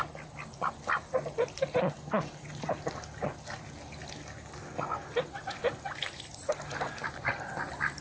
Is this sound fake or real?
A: real